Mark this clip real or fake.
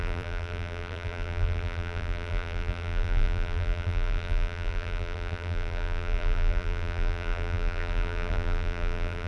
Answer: fake